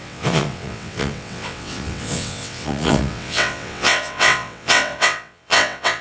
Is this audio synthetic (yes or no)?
yes